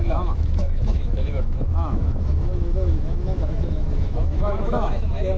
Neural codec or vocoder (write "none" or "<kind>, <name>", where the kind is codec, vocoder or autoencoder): autoencoder, DAC-VAE